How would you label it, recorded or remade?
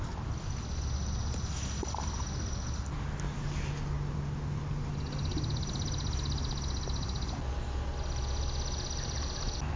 recorded